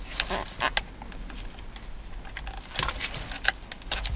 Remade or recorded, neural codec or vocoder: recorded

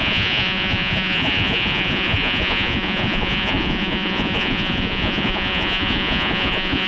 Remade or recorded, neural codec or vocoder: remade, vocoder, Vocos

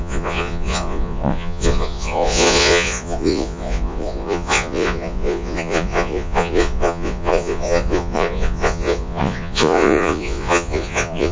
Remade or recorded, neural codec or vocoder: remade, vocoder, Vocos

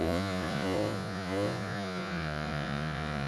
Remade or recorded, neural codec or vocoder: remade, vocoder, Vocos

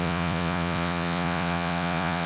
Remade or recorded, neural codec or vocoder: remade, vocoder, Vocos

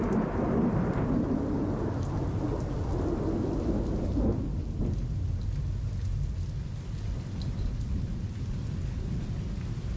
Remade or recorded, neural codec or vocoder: recorded